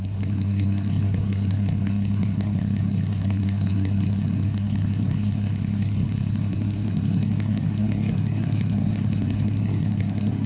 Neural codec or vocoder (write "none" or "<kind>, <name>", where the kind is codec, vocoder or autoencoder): codec, SNAC